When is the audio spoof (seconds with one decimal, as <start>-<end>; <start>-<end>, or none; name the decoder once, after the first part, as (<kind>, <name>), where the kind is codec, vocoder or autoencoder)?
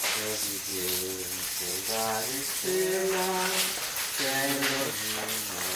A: none